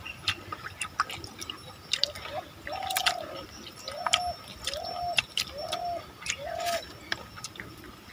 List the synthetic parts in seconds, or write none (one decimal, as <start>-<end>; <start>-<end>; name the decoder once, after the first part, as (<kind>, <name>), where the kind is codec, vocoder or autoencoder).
none